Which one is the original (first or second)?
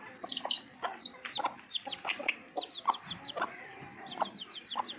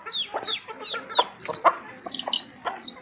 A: second